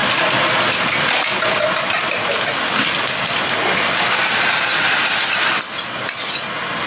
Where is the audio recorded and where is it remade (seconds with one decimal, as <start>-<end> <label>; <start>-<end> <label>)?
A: 0.0-6.9 recorded